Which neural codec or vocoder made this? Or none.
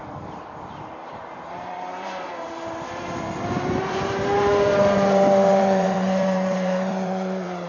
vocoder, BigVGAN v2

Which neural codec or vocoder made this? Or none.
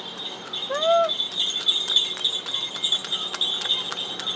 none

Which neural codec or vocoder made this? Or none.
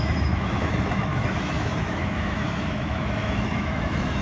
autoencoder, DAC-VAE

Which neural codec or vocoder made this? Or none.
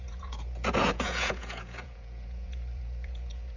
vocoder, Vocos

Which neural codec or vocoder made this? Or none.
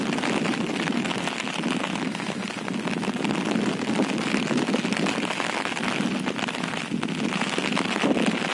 none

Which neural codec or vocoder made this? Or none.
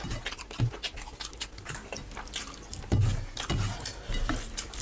none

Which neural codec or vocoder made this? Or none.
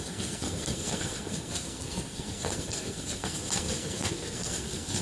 codec, SNAC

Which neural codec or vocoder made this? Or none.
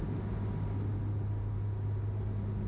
none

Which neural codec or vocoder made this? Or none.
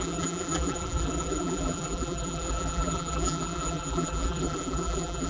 vocoder, BigVGAN v2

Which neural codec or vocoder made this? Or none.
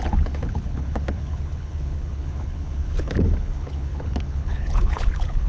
codec, HILCodec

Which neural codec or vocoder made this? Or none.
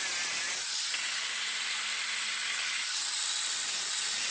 none